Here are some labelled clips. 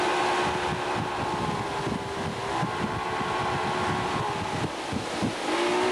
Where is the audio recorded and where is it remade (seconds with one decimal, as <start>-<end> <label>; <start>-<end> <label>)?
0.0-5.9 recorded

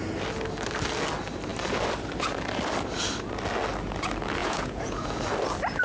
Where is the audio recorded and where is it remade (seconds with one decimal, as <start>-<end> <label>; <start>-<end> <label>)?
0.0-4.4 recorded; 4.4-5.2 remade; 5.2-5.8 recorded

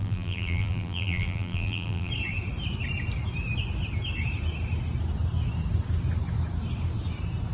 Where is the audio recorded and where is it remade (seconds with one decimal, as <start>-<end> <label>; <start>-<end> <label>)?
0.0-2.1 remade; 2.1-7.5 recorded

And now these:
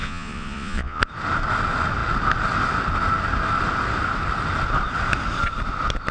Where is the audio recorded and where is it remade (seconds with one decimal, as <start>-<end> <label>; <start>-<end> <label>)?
0.0-1.0 remade; 1.0-6.1 recorded